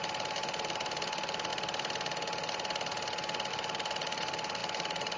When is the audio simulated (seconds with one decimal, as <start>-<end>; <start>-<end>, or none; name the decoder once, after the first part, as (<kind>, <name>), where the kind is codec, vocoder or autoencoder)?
0.0-1.5 (vocoder, BigVGAN v2); 3.5-5.2